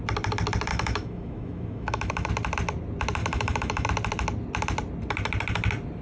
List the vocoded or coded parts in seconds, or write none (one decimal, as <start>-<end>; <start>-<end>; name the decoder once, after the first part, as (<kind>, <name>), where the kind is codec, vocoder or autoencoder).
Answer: 0.7-2.3 (autoencoder, DAC-VAE); 3.2-3.9